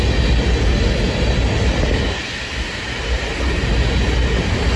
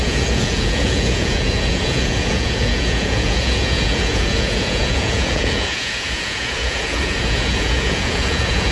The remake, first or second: second